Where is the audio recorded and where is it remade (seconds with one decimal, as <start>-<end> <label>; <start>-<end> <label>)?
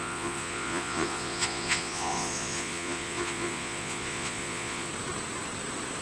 0.0-4.9 remade; 4.9-6.0 recorded